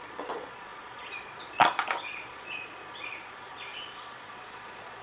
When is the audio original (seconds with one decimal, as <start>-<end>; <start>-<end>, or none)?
none